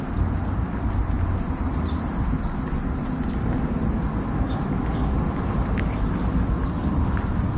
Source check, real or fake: real